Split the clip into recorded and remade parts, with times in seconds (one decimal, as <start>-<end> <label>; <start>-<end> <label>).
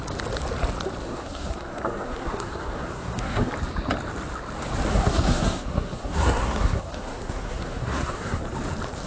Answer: 0.0-1.0 recorded; 1.0-3.5 remade; 3.5-4.9 recorded; 4.9-8.4 remade; 8.4-9.1 recorded